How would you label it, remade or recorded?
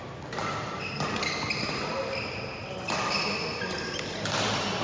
recorded